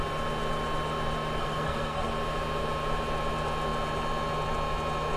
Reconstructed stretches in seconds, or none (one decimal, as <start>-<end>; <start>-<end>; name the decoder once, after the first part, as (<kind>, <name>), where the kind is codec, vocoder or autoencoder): 1.4-2.1 (codec, SNAC)